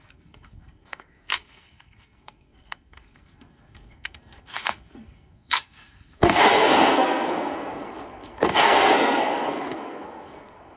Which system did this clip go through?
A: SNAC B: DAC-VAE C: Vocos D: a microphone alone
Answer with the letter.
A